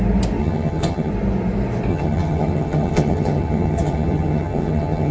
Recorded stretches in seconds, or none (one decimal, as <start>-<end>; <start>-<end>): 0.0-0.4; 1.1-1.9